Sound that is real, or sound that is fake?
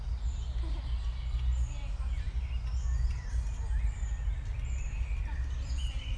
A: real